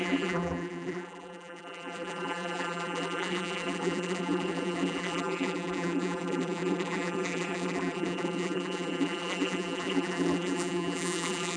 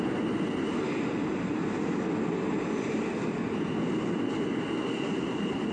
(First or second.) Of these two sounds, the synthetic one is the first